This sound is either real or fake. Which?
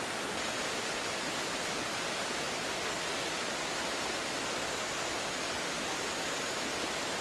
real